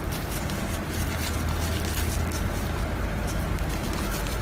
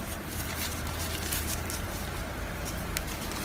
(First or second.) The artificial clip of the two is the second